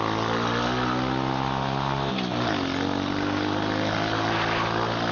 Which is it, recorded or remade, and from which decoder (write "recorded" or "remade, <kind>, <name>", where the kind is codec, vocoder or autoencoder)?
recorded